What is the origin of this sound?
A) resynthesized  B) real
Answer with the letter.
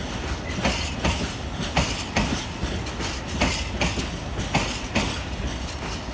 B